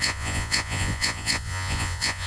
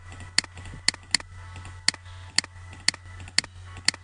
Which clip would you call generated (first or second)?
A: first